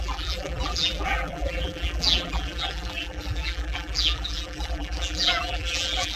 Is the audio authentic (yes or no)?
no